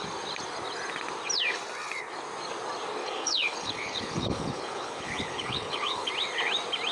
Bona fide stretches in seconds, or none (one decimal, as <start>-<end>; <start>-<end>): 0.0-3.0; 6.1-6.9